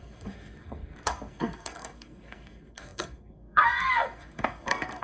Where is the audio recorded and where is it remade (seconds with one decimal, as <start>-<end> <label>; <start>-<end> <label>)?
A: 0.0-5.0 remade